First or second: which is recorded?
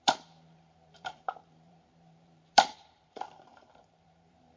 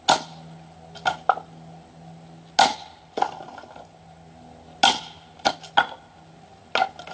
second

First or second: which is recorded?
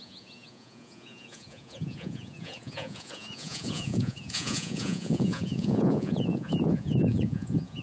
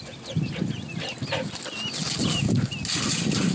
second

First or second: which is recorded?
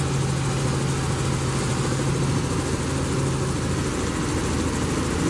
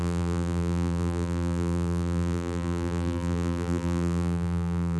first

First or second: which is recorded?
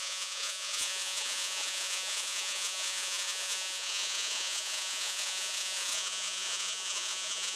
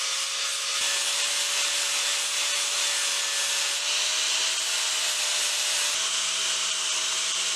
second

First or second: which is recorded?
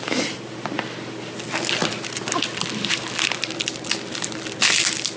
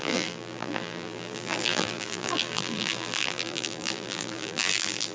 first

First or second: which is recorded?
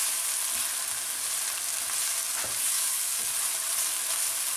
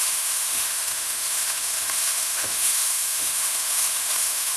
first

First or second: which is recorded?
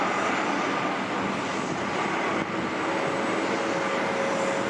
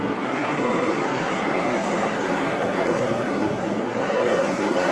first